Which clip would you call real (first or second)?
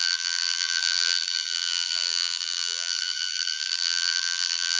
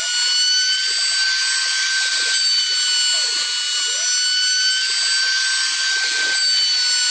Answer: second